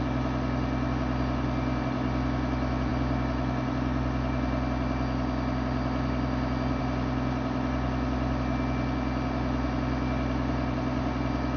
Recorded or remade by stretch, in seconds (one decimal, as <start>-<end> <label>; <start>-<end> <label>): 0.0-11.6 recorded